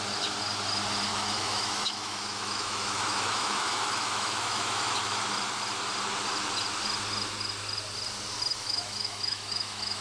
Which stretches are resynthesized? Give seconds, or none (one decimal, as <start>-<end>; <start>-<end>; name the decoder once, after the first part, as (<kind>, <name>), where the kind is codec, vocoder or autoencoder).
1.1-5.2 (autoencoder, DAC-VAE); 8.5-10.0

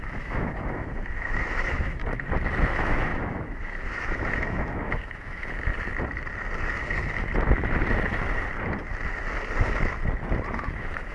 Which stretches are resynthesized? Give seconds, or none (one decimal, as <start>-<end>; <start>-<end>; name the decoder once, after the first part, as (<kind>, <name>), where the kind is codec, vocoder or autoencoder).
0.0-2.0 (autoencoder, DAC-VAE); 2.7-5.7; 10.5-11.1